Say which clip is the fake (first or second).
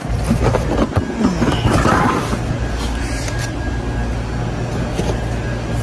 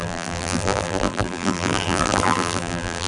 second